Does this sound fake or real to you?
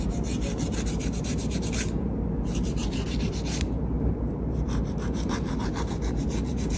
fake